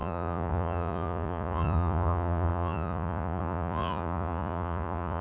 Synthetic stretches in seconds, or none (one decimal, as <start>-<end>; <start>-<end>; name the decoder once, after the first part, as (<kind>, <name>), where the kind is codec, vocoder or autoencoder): 0.0-5.2 (vocoder, Vocos)